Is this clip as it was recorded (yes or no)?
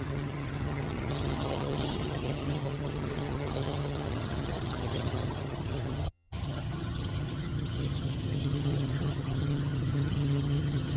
no